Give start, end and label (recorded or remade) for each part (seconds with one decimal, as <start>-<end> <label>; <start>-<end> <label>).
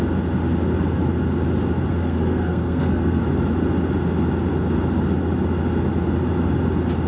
0.0-1.9 recorded; 1.9-3.2 remade; 3.2-7.1 recorded